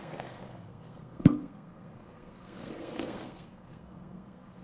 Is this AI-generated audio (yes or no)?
yes